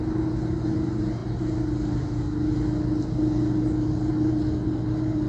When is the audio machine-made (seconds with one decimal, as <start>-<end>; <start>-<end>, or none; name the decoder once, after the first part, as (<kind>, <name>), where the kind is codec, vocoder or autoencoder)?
none